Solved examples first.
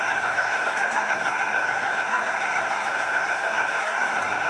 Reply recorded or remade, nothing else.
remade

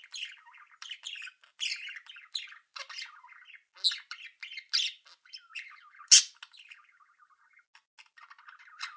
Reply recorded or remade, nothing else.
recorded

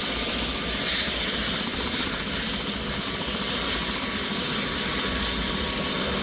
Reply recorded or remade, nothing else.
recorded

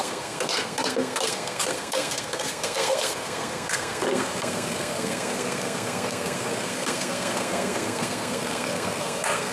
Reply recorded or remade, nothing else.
remade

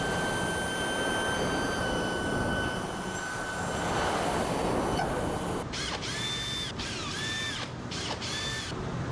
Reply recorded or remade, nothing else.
recorded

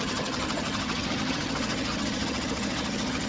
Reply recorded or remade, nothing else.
remade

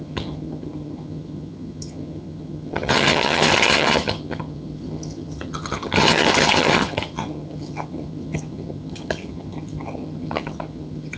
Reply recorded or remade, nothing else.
remade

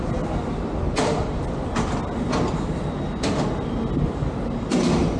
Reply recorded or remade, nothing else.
recorded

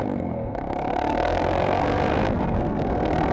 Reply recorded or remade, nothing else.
remade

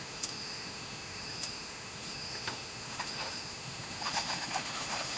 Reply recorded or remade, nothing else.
remade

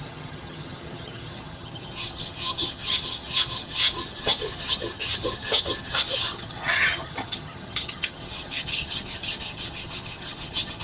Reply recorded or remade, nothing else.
remade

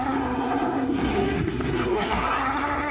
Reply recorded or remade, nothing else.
remade